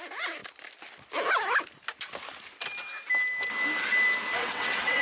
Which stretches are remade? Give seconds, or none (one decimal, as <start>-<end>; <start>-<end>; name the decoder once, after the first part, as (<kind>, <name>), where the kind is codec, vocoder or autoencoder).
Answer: 4.4-5.0 (vocoder, WaveNeXt)